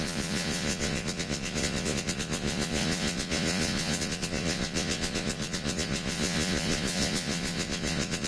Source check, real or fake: fake